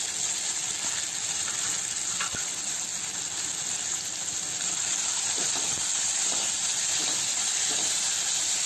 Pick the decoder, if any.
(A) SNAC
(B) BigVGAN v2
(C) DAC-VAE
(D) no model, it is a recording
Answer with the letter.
D